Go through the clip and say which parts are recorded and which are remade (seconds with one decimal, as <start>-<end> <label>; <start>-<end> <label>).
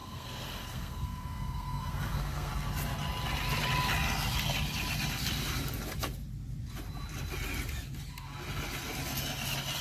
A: 0.0-2.5 remade; 2.5-9.8 recorded